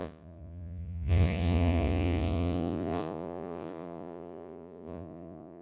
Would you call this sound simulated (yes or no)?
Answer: yes